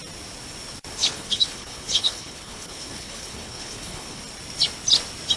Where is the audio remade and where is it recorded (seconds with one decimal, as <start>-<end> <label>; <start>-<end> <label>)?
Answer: 0.0-1.0 recorded; 1.0-4.2 remade; 4.2-5.4 recorded